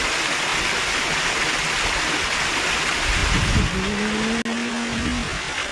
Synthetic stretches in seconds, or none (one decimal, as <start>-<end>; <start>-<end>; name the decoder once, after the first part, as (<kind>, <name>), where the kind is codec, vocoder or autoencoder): none